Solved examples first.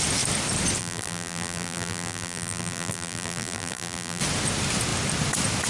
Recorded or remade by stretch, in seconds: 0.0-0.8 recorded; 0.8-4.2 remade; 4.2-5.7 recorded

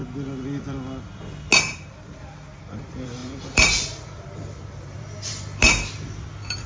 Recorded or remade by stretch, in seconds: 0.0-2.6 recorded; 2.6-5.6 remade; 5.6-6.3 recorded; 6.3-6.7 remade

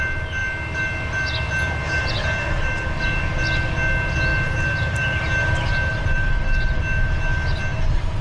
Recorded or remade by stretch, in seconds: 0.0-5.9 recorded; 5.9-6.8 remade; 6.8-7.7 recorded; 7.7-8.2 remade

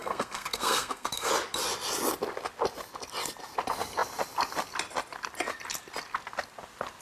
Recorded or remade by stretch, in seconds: 0.0-1.3 remade; 1.3-7.0 recorded

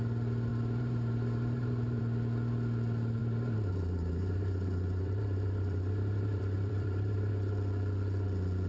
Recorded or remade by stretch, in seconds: 0.0-0.5 recorded; 0.5-2.0 remade; 2.0-3.2 recorded; 3.2-7.3 remade; 7.3-8.7 recorded